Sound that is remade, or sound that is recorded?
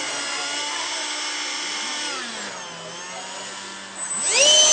recorded